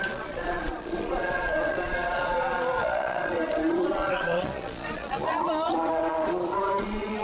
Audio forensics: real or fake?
fake